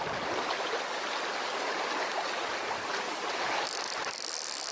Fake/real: real